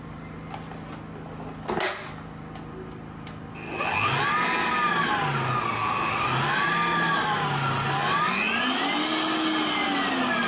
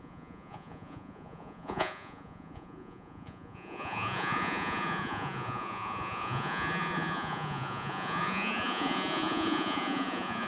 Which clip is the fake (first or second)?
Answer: second